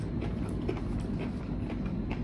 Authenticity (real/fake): real